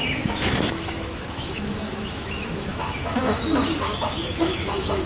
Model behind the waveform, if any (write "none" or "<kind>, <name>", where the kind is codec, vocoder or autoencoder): autoencoder, DAC-VAE